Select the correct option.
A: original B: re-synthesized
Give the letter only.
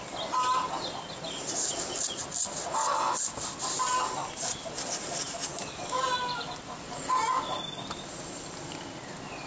A